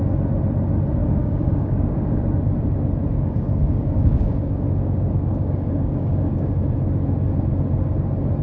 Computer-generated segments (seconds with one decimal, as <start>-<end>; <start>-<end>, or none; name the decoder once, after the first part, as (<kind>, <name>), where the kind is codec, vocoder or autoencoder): 1.0-2.3 (codec, DAC); 3.1-6.5